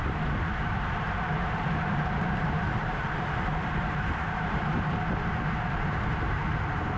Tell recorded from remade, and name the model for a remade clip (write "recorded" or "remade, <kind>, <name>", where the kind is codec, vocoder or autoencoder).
remade, vocoder, BigVGAN v2